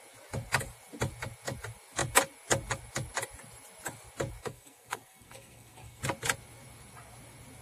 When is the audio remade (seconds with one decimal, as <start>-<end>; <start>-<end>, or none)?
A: 4.4-6.0